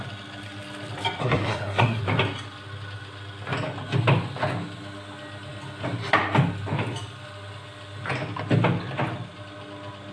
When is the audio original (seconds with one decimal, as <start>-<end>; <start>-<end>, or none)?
0.0-1.2; 2.0-10.1